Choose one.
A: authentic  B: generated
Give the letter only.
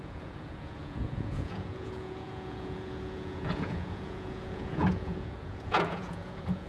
B